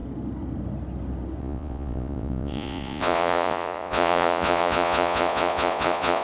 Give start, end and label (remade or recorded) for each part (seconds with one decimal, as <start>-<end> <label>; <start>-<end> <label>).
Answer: 0.0-1.4 recorded; 1.4-6.2 remade